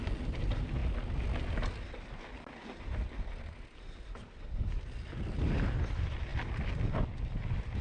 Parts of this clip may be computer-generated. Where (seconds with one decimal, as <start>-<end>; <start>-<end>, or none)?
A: none